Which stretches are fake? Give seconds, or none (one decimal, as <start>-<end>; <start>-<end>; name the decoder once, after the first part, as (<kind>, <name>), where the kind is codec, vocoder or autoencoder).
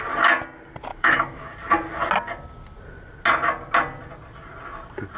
0.9-1.5 (autoencoder, DAC-VAE)